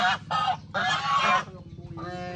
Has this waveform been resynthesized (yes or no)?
no